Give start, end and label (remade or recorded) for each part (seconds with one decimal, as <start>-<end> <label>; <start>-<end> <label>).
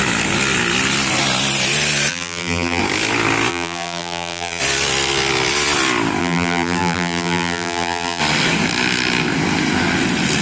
0.0-2.1 recorded; 2.1-2.8 remade; 2.8-3.5 recorded; 3.5-4.6 remade; 4.6-6.2 recorded; 6.2-8.2 remade; 8.2-10.4 recorded